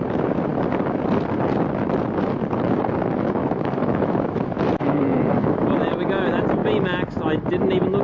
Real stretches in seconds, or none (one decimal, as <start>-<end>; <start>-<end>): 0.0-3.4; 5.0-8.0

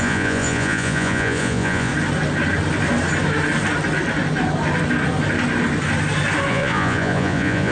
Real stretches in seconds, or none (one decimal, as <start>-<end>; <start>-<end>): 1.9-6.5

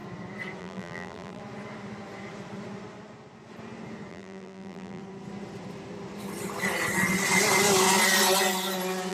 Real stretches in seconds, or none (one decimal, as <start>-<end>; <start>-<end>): 0.0-0.6; 1.4-4.1; 5.0-9.1

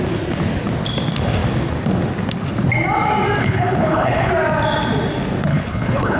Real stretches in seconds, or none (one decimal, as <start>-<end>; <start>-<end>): 0.0-3.4; 4.3-5.5

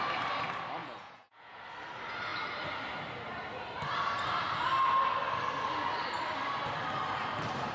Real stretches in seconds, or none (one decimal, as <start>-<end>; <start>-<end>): 0.0-0.8; 1.6-7.7